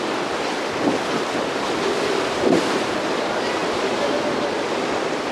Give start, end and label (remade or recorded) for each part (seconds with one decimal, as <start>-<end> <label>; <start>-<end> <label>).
0.0-5.3 recorded